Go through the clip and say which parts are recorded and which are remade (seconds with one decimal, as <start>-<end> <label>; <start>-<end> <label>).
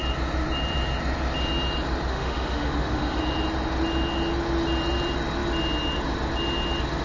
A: 0.0-2.1 recorded; 2.1-3.2 remade; 3.2-7.0 recorded